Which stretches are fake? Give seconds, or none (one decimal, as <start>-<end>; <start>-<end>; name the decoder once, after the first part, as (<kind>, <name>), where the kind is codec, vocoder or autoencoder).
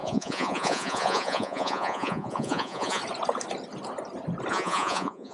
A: 0.0-3.0 (vocoder, Vocos); 4.5-5.3